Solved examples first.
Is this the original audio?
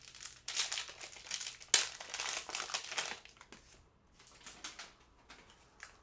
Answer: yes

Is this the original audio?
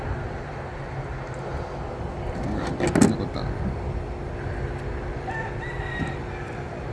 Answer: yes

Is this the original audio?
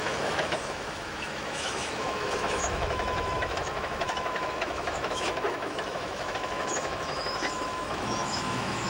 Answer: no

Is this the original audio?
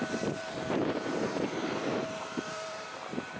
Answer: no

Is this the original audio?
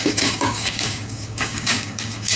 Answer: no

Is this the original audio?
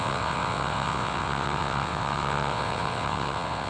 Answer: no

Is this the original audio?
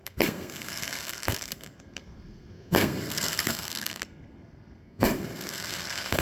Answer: no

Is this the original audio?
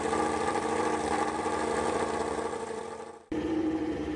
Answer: no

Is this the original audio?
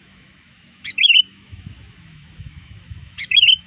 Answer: no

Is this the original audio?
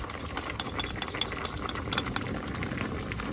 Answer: yes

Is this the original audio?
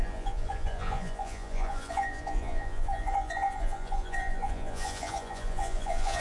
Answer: no